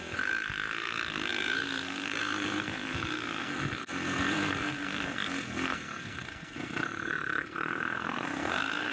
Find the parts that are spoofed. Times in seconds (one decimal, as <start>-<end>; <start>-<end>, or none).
0.0-8.9